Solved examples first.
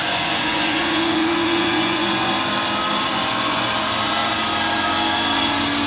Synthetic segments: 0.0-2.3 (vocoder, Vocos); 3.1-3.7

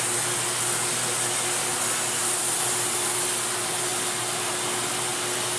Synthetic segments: none

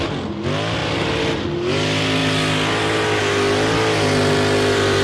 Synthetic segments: none

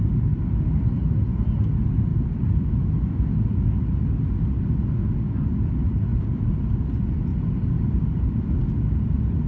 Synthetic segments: 2.1-2.7 (vocoder, BigVGAN v2); 6.1-6.6; 7.3-8.6

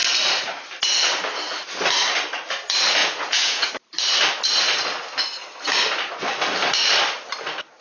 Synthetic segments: 3.0-3.7 (vocoder, Vocos)

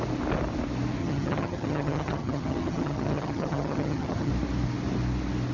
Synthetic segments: 1.0-4.3 (vocoder, HiFi-GAN)

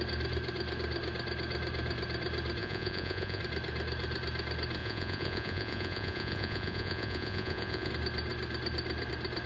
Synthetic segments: 2.6-3.4 (vocoder, Vocos); 4.8-7.9